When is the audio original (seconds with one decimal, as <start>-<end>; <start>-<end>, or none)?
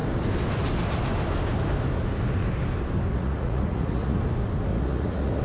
0.0-3.1; 4.2-4.7